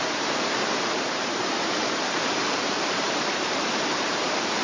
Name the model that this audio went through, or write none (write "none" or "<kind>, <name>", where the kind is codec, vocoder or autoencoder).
vocoder, BigVGAN v2